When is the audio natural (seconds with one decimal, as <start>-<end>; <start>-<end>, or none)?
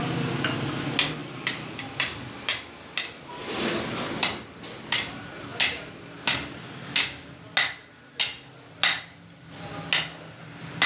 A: 0.0-1.2; 2.3-3.4; 4.2-10.9